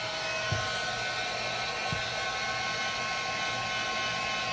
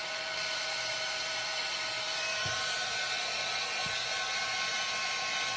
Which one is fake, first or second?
second